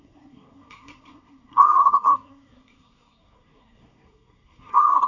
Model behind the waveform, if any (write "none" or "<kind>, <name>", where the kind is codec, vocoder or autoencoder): codec, SNAC